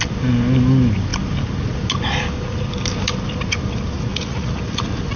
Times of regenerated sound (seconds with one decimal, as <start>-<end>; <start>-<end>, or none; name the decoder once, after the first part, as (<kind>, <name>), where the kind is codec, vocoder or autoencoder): 4.1-4.6 (vocoder, Vocos)